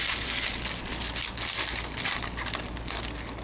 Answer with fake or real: real